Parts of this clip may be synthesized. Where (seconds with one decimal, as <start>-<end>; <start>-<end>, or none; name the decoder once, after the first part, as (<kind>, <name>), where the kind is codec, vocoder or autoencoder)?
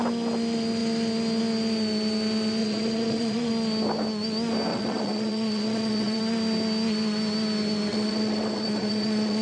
2.6-3.5 (vocoder, Vocos); 4.7-6.2; 7.9-9.4